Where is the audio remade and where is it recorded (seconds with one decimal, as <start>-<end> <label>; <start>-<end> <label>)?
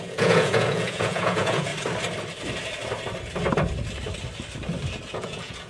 0.0-1.7 remade; 1.7-5.1 recorded; 5.1-5.7 remade